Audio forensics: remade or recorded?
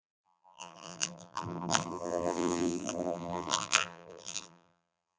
remade